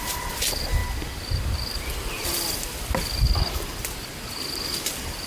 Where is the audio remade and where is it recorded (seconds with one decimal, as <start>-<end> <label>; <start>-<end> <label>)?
0.0-5.3 recorded